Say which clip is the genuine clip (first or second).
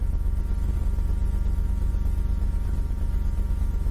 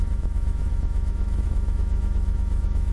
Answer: first